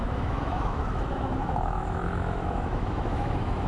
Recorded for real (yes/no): no